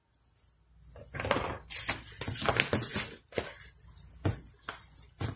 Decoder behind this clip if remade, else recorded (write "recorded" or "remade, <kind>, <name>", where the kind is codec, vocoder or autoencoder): recorded